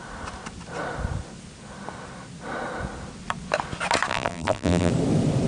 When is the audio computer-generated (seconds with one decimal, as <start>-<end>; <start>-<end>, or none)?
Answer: 4.1-4.9